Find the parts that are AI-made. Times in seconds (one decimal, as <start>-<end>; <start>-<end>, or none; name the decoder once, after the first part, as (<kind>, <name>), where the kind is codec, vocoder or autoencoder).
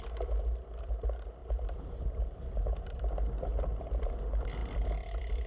1.4-3.1 (vocoder, BigVGAN v2)